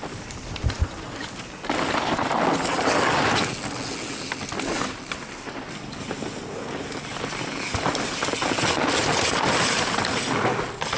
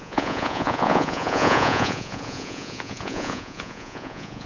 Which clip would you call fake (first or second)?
second